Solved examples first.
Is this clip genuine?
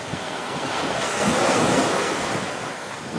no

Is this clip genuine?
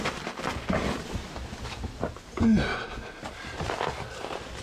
yes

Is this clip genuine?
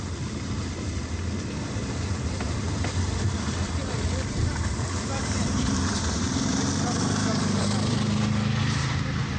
no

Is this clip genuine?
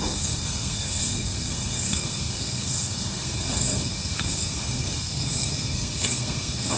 no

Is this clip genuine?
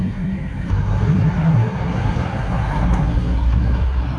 no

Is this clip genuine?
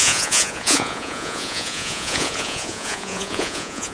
no